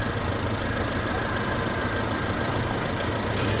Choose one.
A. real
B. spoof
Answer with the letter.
A